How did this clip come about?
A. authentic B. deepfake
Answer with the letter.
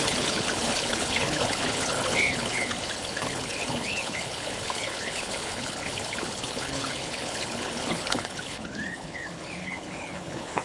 B